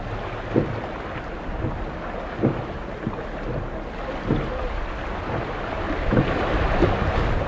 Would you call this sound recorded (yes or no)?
yes